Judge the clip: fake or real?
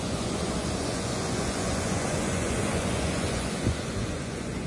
fake